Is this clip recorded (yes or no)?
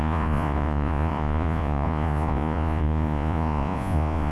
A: no